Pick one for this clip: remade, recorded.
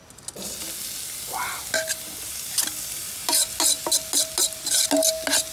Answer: recorded